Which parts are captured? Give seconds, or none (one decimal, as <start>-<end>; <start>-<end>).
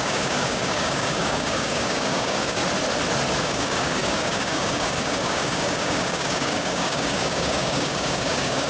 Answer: 2.6-3.4